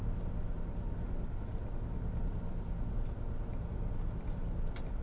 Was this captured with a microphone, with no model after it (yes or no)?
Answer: yes